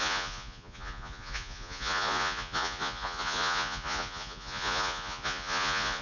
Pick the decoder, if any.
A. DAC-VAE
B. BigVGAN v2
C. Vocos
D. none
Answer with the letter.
C